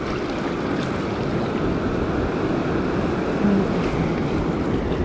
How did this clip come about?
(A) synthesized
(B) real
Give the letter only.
B